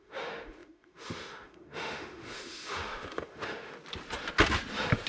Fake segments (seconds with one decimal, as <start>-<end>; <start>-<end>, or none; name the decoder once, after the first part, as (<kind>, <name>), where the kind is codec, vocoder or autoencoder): 0.0-3.7 (autoencoder, DAC-VAE)